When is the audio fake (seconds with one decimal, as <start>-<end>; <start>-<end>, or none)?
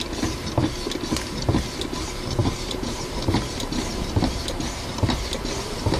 2.4-5.1